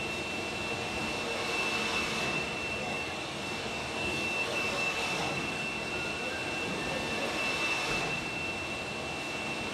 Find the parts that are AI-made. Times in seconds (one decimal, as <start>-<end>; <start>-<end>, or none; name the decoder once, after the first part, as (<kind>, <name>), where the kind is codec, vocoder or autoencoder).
2.8-5.9 (codec, DAC)